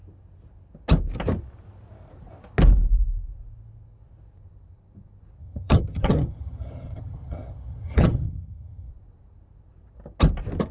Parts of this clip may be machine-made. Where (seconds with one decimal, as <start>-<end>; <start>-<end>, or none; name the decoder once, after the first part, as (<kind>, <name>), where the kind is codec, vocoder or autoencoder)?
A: 5.4-8.9 (vocoder, HiFi-GAN)